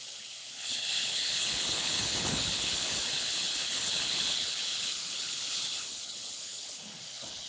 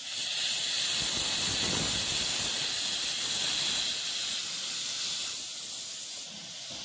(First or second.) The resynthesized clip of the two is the first